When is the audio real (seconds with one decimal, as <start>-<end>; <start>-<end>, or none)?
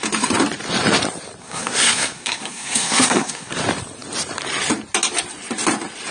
0.0-1.4; 3.5-6.1